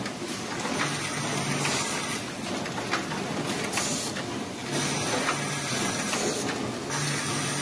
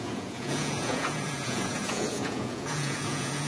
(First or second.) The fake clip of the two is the second